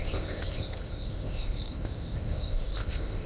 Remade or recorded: remade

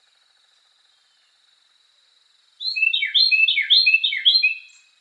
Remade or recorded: recorded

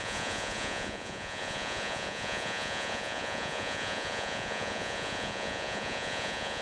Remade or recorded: remade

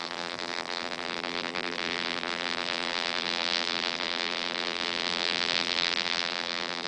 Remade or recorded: remade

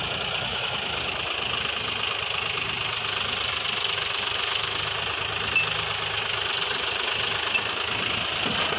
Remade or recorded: recorded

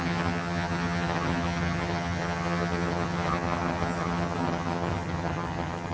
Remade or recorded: remade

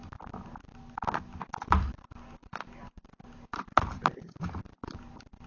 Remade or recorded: recorded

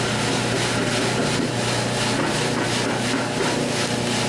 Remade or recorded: recorded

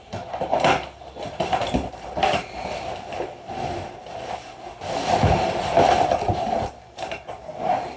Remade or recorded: recorded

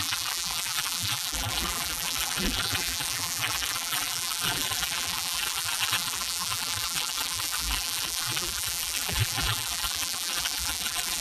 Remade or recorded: remade